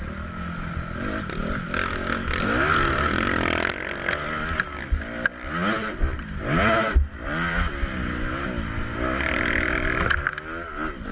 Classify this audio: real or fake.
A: real